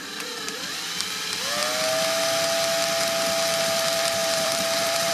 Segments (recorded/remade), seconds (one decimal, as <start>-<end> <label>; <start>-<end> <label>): 0.0-1.6 remade; 1.6-3.6 recorded; 3.6-5.1 remade